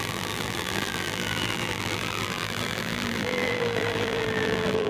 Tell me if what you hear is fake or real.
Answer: fake